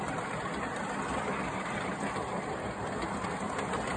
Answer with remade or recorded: recorded